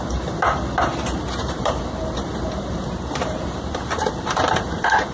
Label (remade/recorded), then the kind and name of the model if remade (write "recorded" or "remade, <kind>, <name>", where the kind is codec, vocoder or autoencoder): remade, vocoder, BigVGAN v2